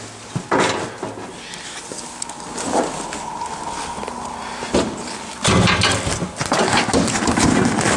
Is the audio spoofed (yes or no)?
no